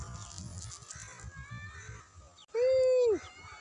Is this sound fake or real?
real